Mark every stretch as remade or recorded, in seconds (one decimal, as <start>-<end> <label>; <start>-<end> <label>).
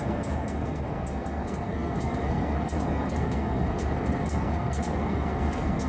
0.0-5.9 remade